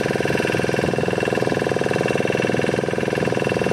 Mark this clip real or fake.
real